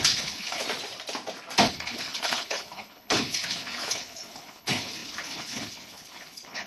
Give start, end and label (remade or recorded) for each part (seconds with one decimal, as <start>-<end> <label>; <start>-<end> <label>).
0.0-0.6 remade; 0.6-1.7 recorded; 1.7-6.7 remade